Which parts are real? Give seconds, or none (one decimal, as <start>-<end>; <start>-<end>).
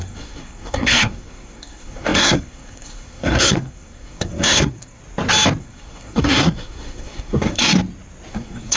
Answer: 5.0-5.6; 7.7-8.3